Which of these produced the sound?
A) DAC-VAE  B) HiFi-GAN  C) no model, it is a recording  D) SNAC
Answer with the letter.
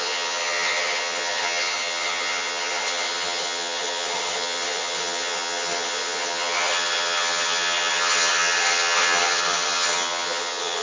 B